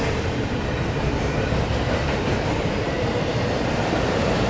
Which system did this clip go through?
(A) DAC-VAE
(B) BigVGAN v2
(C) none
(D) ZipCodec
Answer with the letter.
B